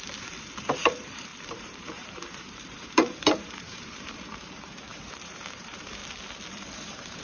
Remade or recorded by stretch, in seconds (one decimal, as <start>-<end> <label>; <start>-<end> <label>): 0.0-6.0 remade; 6.0-6.5 recorded; 6.5-7.2 remade